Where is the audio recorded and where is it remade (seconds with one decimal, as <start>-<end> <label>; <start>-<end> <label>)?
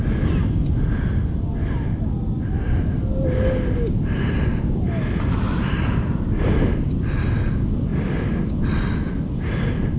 0.0-10.0 recorded